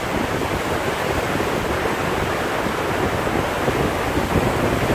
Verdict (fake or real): real